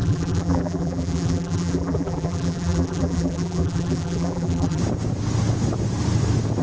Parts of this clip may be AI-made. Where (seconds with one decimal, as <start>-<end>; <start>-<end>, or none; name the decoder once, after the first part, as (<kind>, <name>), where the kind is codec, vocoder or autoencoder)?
0.0-4.8 (vocoder, BigVGAN v2)